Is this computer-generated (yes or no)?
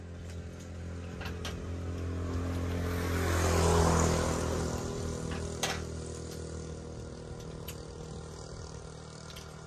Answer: no